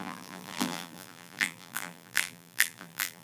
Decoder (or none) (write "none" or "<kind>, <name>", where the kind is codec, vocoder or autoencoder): vocoder, BigVGAN v2